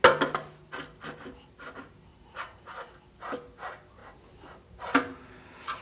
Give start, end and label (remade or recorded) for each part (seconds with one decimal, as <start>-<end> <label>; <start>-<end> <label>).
0.0-2.1 recorded; 2.1-2.9 remade; 2.9-5.8 recorded